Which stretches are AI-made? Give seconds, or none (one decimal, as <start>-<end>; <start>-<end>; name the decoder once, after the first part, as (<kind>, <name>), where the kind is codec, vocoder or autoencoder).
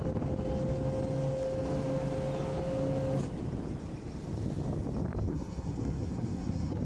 5.3-6.8 (codec, SNAC)